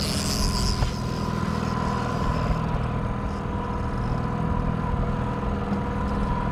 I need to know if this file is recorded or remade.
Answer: recorded